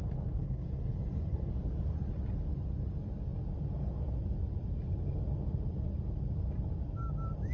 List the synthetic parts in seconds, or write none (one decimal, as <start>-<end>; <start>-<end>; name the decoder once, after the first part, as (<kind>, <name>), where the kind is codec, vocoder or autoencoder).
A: 0.4-1.5 (codec, HILCodec)